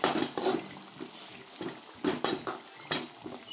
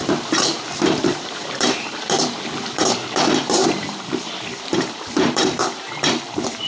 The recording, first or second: first